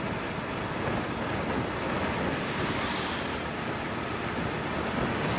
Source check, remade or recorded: recorded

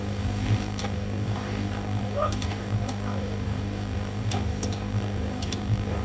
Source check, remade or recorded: remade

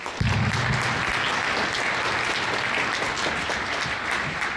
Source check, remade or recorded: recorded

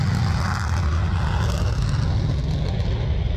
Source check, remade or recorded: recorded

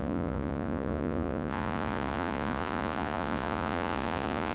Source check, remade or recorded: remade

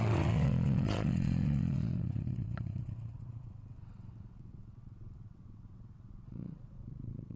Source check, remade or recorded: remade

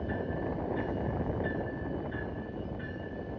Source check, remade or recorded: recorded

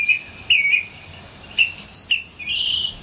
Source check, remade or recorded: recorded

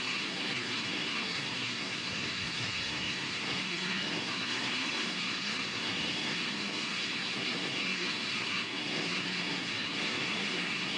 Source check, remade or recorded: remade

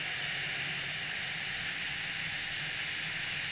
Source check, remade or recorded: recorded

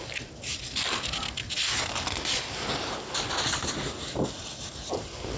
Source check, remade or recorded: recorded